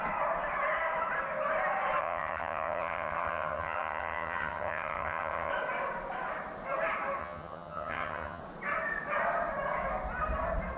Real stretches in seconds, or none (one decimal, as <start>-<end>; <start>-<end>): 0.0-2.0; 5.5-7.2; 8.4-10.8